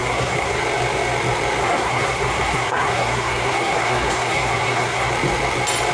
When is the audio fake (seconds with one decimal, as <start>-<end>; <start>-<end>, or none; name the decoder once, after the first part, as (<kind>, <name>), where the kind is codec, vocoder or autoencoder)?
0.0-0.6 (codec, SNAC); 1.6-5.1